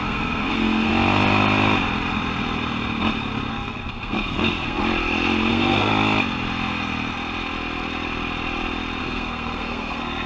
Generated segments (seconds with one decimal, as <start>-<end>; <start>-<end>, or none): 0.0-0.9; 3.5-4.8; 5.5-5.9; 9.0-10.3